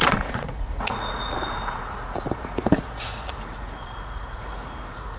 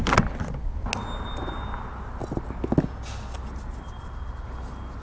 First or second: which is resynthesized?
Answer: first